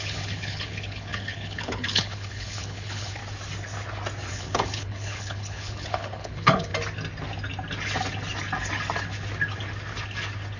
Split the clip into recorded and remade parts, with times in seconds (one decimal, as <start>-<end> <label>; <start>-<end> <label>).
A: 0.0-3.2 remade; 3.2-4.3 recorded; 4.3-6.7 remade; 6.7-10.6 recorded